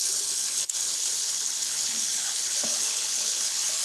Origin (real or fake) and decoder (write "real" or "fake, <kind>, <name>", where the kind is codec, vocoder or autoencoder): fake, codec, HILCodec